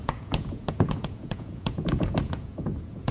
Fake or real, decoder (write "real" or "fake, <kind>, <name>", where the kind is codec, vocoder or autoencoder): fake, vocoder, Vocos